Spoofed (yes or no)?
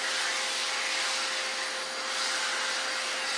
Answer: no